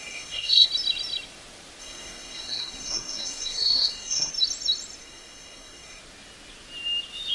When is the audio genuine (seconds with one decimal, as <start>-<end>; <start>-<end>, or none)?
0.7-1.8; 4.3-5.0; 6.0-7.3